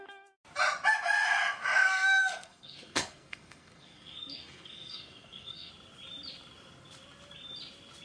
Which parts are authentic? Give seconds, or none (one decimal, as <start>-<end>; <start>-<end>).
0.0-1.8; 5.7-8.0